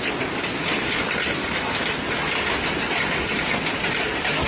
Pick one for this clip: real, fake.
real